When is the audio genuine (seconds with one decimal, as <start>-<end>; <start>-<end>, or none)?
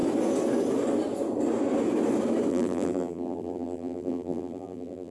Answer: 0.0-2.5